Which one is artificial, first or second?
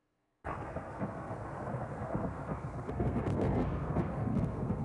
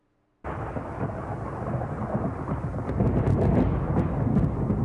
first